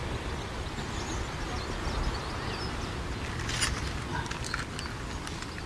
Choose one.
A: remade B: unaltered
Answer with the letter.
B